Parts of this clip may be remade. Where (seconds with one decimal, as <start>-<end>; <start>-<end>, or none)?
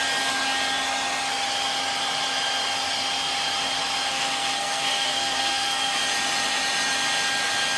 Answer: 4.1-6.0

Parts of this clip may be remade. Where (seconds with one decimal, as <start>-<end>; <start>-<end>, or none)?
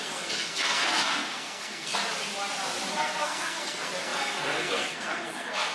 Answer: 0.0-1.9; 2.9-5.7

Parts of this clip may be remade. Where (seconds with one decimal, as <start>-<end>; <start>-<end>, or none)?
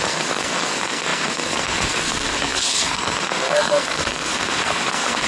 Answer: 0.0-5.3